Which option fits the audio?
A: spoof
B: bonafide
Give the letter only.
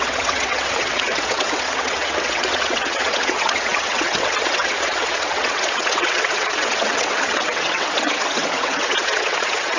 A